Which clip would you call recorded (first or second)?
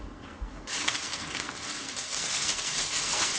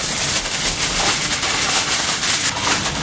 second